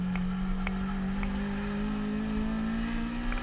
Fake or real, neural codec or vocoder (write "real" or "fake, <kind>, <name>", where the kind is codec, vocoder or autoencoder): real